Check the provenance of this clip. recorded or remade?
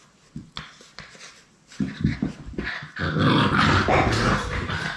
recorded